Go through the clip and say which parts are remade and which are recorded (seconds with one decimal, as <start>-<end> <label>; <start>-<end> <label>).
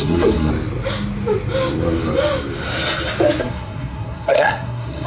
0.0-0.5 remade; 0.5-3.4 recorded; 3.4-5.1 remade